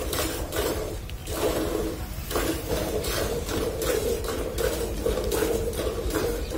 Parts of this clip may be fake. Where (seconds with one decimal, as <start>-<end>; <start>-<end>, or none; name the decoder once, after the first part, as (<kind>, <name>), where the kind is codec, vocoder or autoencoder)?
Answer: 0.0-1.2 (vocoder, BigVGAN v2); 3.2-4.0; 5.6-6.6